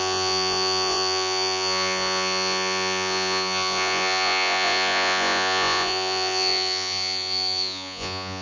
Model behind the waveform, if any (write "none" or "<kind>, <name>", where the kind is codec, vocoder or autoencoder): vocoder, Vocos